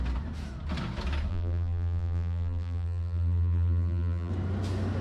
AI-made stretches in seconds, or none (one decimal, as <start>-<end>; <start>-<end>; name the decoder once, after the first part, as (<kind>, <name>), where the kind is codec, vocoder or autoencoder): 1.3-4.3 (vocoder, BigVGAN v2)